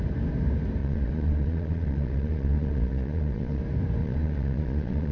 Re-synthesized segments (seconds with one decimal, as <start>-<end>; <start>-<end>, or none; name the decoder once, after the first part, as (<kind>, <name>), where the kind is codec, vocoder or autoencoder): 0.8-3.6 (vocoder, Vocos); 4.0-5.1